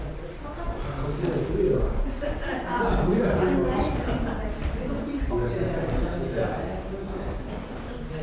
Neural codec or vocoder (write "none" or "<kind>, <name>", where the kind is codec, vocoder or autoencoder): none